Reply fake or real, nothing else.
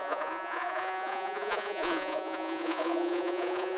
fake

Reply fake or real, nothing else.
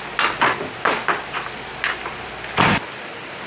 real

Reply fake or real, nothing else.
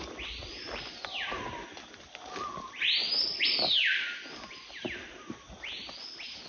real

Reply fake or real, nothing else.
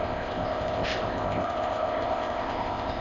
fake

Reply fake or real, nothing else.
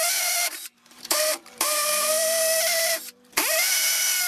fake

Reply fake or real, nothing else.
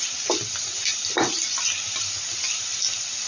real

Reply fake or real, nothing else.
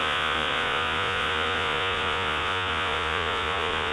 fake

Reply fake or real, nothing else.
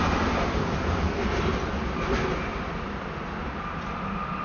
real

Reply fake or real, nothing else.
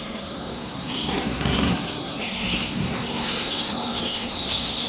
fake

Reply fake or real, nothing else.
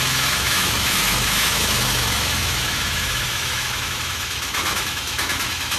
fake